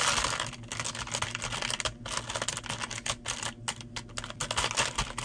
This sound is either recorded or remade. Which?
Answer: recorded